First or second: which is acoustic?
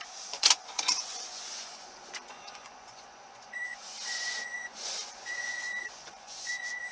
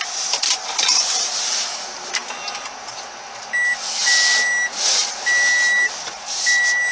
second